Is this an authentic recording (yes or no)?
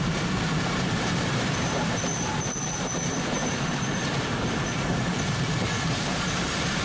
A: no